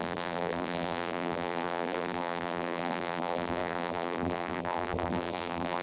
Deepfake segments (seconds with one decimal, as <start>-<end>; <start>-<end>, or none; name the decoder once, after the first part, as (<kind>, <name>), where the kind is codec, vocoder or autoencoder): 0.0-5.8 (vocoder, BigVGAN v2)